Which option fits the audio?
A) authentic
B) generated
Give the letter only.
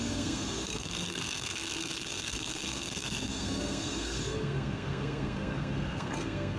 B